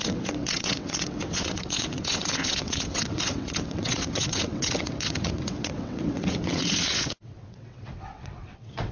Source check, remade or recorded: remade